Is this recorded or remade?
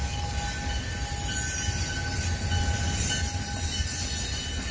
recorded